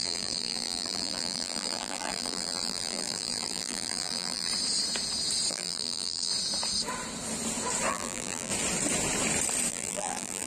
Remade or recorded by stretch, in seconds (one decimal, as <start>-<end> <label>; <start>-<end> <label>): 0.0-4.5 remade; 4.5-5.5 recorded; 5.5-6.3 remade; 6.3-7.9 recorded; 7.9-8.5 remade; 8.5-9.7 recorded; 9.7-10.5 remade